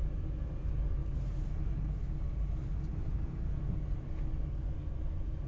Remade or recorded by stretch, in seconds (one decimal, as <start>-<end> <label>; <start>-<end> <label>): 0.0-1.0 recorded; 1.0-2.0 remade; 2.0-2.9 recorded; 2.9-3.5 remade; 3.5-5.5 recorded

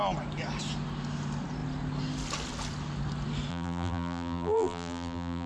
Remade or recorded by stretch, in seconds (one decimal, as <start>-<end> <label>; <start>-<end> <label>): 0.0-3.5 recorded; 3.5-5.5 remade

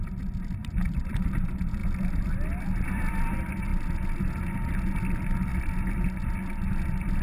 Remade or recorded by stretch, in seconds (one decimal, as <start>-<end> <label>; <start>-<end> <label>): 0.0-0.6 recorded; 0.6-1.3 remade; 1.3-1.8 recorded; 1.8-2.3 remade; 2.3-7.2 recorded

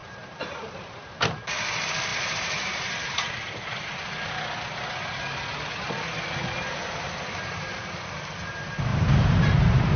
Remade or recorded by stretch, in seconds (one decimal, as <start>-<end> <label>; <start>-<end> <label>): 0.0-1.2 remade; 1.2-2.1 recorded; 2.1-3.9 remade; 3.9-6.8 recorded; 6.8-8.2 remade; 8.2-8.9 recorded; 8.9-10.0 remade

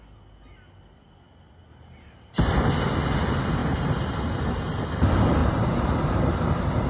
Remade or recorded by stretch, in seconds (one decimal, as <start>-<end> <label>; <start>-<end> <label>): 0.0-1.7 recorded; 1.7-2.4 remade; 2.4-3.6 recorded; 3.6-4.2 remade; 4.2-5.4 recorded; 5.4-6.1 remade; 6.1-6.9 recorded

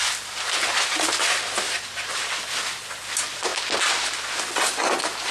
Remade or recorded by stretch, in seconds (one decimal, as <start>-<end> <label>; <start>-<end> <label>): 0.0-5.3 recorded

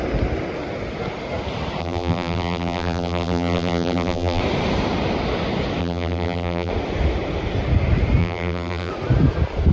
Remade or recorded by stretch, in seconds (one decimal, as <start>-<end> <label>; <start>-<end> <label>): 0.0-1.8 recorded; 1.8-4.4 remade; 4.4-5.8 recorded; 5.8-6.7 remade; 6.7-8.2 recorded; 8.2-8.9 remade; 8.9-9.7 recorded

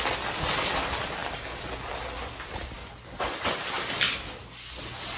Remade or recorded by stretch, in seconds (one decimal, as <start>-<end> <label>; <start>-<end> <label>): 0.0-5.2 recorded